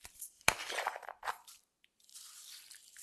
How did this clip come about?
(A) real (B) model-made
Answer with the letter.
B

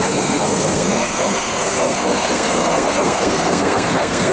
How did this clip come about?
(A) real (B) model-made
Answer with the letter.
B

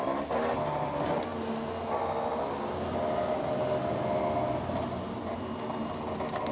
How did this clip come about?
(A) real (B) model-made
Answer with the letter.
A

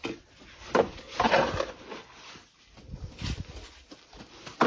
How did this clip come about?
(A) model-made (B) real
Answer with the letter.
B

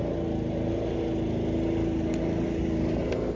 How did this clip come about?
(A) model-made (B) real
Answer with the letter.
B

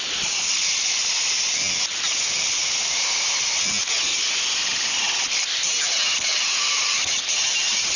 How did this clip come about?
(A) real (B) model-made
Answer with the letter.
A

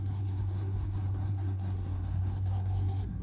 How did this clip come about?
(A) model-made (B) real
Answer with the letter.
A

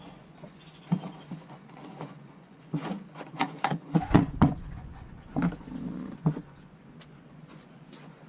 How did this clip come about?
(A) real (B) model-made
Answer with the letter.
B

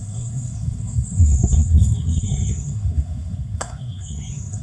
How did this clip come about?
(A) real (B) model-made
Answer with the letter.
B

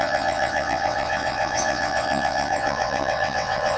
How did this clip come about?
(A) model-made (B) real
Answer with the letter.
A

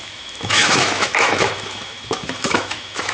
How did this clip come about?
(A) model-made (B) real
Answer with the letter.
A